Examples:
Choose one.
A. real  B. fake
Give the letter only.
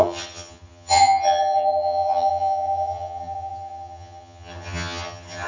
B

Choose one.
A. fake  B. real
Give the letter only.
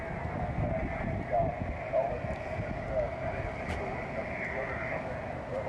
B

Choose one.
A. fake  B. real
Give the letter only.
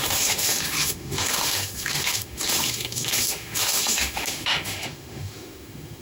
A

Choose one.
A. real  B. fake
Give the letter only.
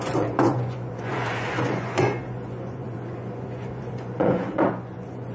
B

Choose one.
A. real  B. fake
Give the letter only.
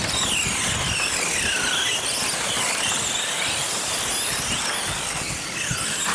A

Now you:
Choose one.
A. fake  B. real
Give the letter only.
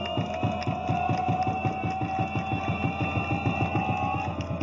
B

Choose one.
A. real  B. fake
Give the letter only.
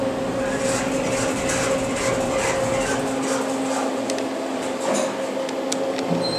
A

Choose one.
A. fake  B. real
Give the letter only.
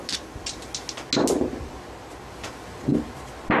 B